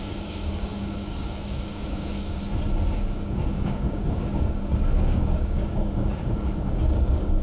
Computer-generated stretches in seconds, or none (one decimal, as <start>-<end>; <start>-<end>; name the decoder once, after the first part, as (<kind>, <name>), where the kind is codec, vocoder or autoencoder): 0.0-2.4 (codec, DAC); 3.0-7.4